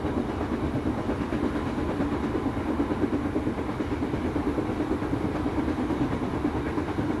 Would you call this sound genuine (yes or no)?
yes